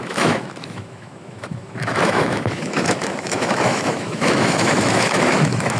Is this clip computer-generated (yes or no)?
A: yes